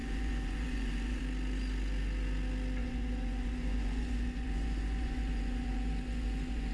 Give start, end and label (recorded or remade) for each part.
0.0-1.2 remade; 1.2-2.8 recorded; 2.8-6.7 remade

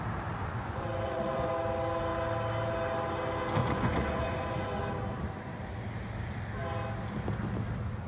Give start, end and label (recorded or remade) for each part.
0.0-0.4 recorded; 0.4-1.5 remade; 1.5-3.6 recorded; 3.6-4.8 remade; 4.8-8.1 recorded

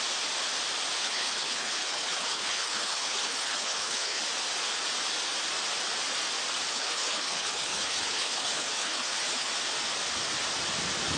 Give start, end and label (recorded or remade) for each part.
0.0-1.0 recorded; 1.0-4.2 remade; 4.2-6.7 recorded; 6.7-9.5 remade; 9.5-11.2 recorded

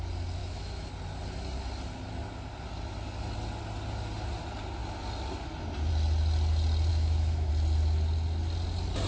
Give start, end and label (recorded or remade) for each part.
0.0-0.4 recorded; 0.4-0.9 remade; 0.9-6.9 recorded; 6.9-7.5 remade; 7.5-9.1 recorded

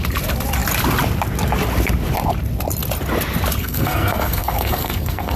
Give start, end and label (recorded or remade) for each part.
0.0-3.6 recorded; 3.6-5.4 remade